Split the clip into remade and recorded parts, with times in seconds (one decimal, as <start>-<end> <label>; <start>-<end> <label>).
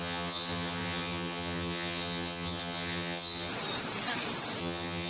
0.0-3.5 remade; 3.5-4.6 recorded; 4.6-5.1 remade